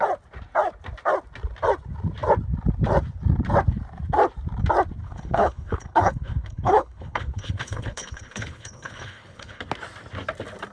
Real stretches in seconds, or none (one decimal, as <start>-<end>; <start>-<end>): 0.0-5.0; 9.6-10.7